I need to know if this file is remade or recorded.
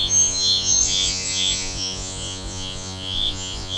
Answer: remade